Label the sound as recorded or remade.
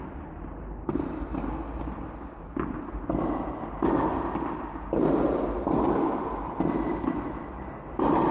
recorded